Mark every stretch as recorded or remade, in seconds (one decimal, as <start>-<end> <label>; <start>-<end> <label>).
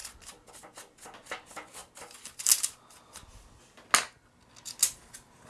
0.0-5.5 recorded